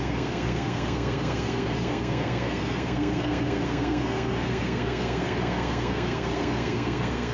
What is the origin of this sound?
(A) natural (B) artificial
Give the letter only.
B